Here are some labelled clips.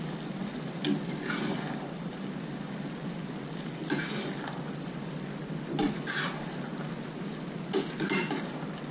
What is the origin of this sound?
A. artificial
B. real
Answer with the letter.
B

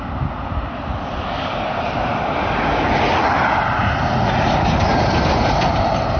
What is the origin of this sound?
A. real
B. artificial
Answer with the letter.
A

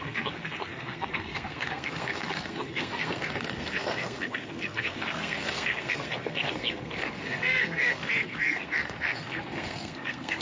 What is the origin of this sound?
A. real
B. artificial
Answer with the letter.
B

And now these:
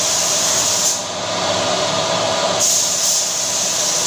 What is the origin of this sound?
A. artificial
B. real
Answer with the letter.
B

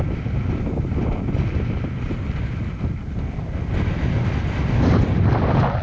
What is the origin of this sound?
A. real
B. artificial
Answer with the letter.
A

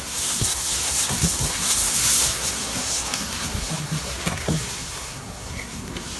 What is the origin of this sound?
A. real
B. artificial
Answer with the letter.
B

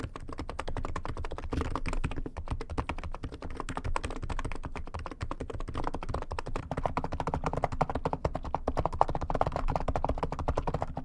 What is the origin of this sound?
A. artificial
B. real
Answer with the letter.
B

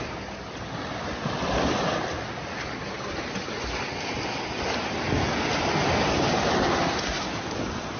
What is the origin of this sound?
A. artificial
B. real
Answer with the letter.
B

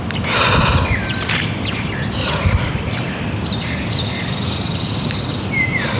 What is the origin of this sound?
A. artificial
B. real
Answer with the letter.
B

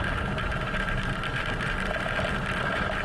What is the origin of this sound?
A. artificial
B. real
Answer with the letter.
B